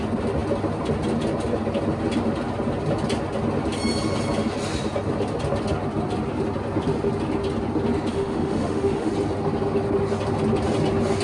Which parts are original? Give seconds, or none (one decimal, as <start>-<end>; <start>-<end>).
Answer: 0.0-8.1; 9.1-11.2